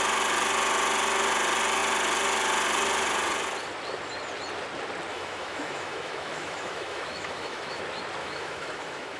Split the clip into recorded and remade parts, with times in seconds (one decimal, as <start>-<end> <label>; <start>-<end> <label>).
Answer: 0.0-5.1 recorded; 5.1-7.8 remade; 7.8-8.2 recorded; 8.2-9.2 remade